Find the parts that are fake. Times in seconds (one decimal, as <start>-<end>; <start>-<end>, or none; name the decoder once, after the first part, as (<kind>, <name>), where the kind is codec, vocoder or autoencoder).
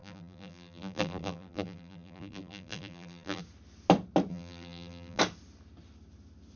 0.0-3.4 (vocoder, BigVGAN v2); 4.3-5.2